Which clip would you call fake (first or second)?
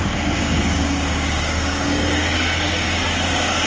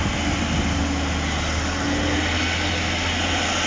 first